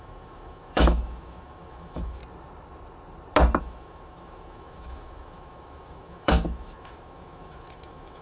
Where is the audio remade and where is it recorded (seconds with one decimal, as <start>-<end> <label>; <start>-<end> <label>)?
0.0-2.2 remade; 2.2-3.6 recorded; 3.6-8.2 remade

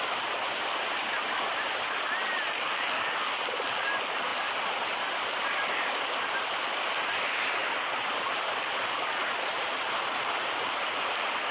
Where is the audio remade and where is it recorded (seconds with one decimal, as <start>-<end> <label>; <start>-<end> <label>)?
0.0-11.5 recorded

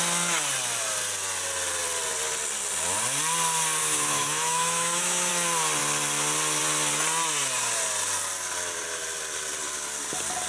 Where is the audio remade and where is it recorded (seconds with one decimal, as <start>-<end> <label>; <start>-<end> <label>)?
0.0-3.8 recorded; 3.8-5.3 remade; 5.3-10.5 recorded

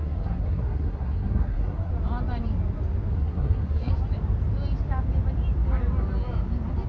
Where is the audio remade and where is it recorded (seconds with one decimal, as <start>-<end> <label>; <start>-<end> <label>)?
0.0-1.9 remade; 1.9-3.1 recorded; 3.1-3.9 remade; 3.9-6.9 recorded